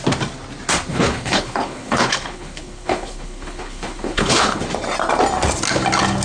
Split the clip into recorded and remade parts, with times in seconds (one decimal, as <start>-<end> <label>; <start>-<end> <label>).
0.0-0.9 recorded; 0.9-4.6 remade; 4.6-6.2 recorded